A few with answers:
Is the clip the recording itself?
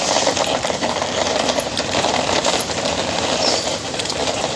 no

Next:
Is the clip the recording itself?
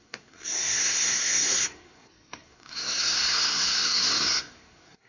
no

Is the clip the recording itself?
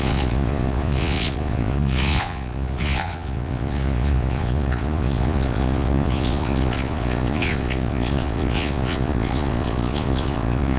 no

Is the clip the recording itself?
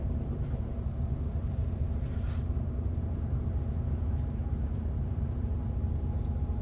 no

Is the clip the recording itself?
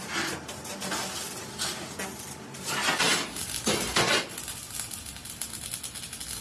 yes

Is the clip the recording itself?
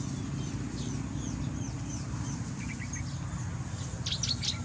yes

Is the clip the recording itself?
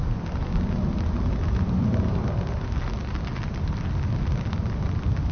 yes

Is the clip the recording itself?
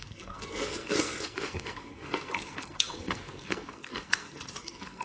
no